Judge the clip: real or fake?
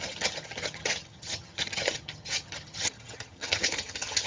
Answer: fake